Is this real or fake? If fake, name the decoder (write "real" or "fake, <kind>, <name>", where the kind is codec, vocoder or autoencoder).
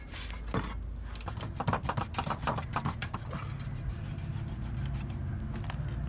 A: real